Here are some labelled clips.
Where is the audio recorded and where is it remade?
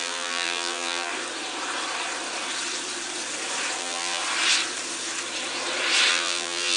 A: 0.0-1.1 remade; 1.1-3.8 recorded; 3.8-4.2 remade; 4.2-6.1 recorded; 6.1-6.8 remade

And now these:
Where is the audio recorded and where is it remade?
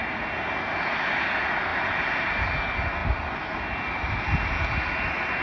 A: 0.0-1.7 recorded; 1.7-2.6 remade; 2.6-5.4 recorded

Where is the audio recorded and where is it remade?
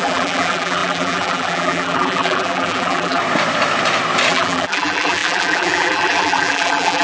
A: 0.0-3.2 remade; 3.2-4.3 recorded; 4.3-7.0 remade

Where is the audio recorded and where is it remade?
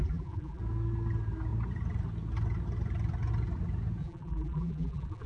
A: 0.0-0.6 remade; 0.6-4.0 recorded; 4.0-5.3 remade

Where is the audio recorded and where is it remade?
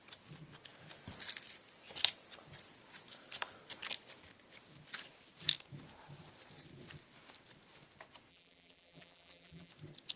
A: 0.0-8.3 recorded; 8.3-9.7 remade; 9.7-10.2 recorded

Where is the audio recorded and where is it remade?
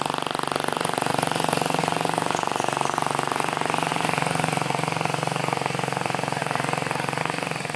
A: 0.0-1.1 recorded; 1.1-1.8 remade; 1.8-3.9 recorded; 3.9-5.4 remade; 5.4-6.4 recorded; 6.4-7.2 remade; 7.2-7.8 recorded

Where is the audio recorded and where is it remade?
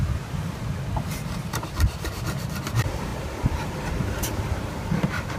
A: 0.0-5.4 remade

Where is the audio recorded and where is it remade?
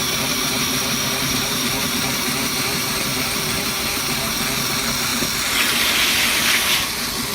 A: 0.0-4.4 remade; 4.4-7.3 recorded